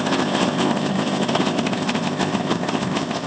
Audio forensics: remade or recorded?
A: remade